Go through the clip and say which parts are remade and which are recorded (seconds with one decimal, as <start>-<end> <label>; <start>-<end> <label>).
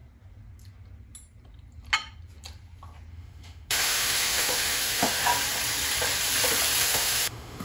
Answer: 0.0-3.1 recorded; 3.1-5.2 remade; 5.2-6.8 recorded; 6.8-7.6 remade